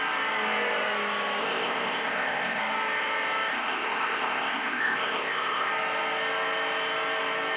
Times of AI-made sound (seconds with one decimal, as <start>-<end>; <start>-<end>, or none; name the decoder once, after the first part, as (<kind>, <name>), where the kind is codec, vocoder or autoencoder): 1.4-2.6 (codec, ZipCodec); 3.5-5.7